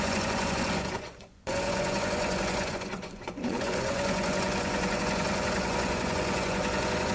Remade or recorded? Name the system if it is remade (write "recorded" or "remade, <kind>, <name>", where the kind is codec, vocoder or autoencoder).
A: remade, vocoder, Vocos